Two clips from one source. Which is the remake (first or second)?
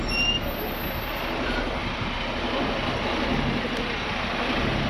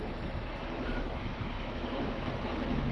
second